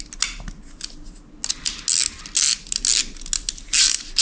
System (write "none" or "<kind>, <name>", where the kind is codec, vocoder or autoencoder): none